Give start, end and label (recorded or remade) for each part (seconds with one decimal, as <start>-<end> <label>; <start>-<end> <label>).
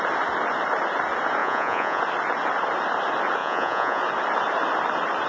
0.0-1.4 recorded; 1.4-2.0 remade; 2.0-3.4 recorded; 3.4-4.0 remade; 4.0-5.3 recorded